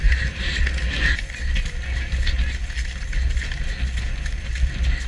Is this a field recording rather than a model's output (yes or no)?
yes